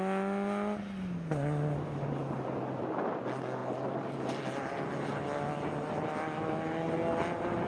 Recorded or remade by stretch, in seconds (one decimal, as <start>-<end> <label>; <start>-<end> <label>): 0.0-7.7 recorded